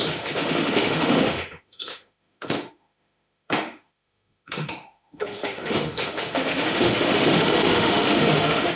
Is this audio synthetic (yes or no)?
yes